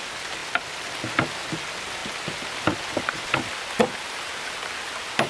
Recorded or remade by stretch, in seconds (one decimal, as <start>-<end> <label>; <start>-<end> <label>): 0.0-0.4 recorded; 0.4-0.9 remade; 0.9-2.0 recorded; 2.0-4.7 remade; 4.7-5.3 recorded